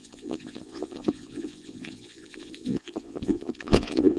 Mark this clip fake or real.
fake